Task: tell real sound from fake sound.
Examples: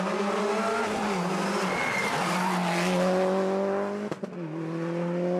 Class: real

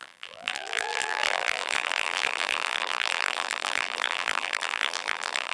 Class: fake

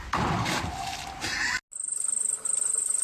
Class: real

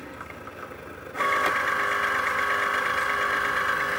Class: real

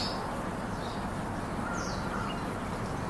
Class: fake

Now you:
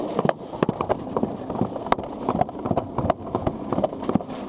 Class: real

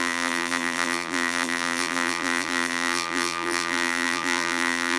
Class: fake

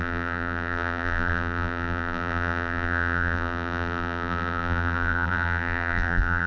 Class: fake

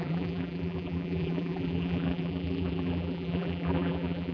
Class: fake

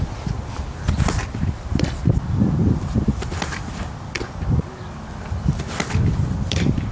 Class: fake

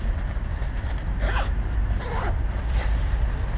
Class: fake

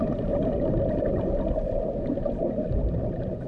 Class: real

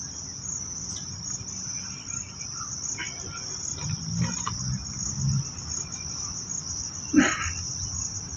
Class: real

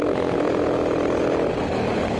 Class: real